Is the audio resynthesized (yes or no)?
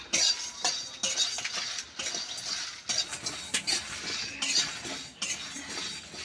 no